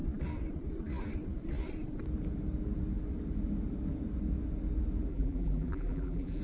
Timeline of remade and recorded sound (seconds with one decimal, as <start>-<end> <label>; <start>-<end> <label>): 0.0-5.1 recorded; 5.1-6.4 remade